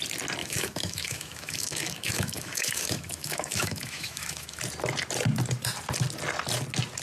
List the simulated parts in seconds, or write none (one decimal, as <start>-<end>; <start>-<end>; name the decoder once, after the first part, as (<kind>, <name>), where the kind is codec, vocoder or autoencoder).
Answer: 0.4-4.6 (autoencoder, DAC-VAE)